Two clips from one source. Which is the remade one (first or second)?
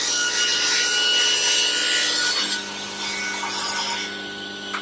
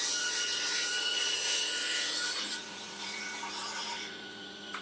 second